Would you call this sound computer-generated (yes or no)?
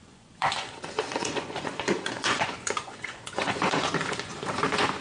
yes